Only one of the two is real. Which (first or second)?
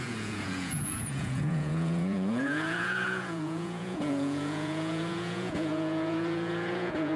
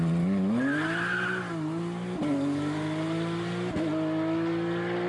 second